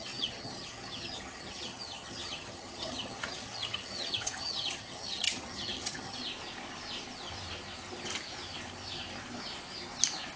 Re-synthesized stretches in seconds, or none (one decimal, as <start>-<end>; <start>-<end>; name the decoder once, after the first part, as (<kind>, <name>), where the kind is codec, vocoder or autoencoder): 0.0-6.2 (vocoder, HiFi-GAN)